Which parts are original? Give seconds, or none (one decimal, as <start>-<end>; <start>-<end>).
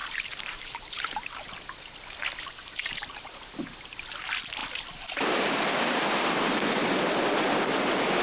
1.3-2.8; 3.5-8.2